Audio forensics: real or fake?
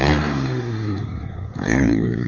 fake